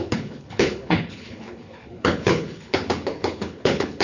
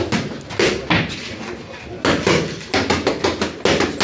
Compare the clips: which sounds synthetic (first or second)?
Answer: first